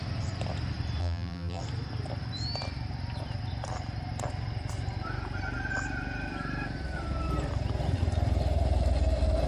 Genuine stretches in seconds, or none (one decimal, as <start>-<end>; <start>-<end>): 0.0-1.0; 1.6-9.5